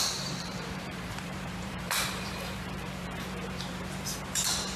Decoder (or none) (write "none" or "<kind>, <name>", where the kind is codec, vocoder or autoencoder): vocoder, BigVGAN v2